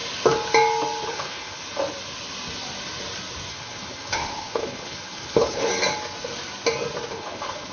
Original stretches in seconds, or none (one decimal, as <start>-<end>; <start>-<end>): 0.0-1.1; 1.6-3.5; 5.7-7.1